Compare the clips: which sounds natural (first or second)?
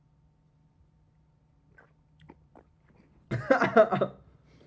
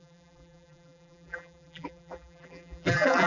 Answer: first